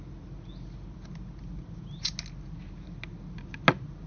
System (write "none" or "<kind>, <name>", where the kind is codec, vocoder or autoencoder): none